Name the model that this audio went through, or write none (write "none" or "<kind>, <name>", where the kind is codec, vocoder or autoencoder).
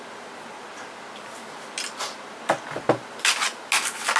none